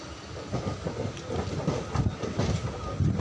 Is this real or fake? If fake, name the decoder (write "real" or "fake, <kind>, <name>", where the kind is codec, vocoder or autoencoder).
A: real